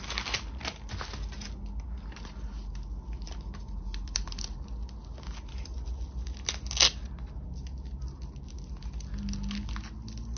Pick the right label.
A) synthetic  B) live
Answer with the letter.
B